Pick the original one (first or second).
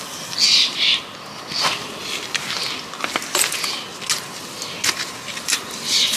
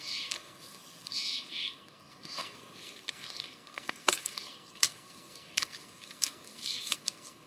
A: first